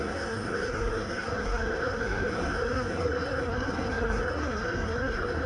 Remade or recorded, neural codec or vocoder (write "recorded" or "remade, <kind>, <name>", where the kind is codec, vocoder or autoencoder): remade, codec, SNAC